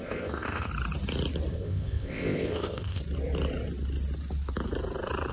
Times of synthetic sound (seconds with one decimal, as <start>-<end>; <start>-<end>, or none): 0.0-0.7; 1.5-3.0